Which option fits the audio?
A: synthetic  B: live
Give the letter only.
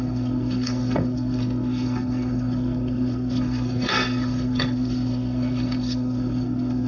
A